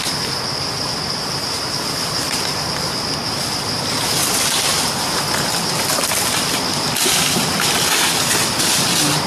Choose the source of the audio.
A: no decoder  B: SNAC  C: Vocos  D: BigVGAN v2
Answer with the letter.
A